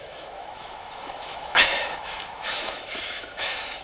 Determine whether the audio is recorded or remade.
remade